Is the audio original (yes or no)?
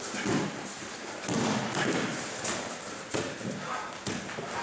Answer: yes